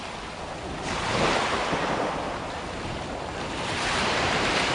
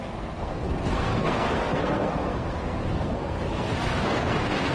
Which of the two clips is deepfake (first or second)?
second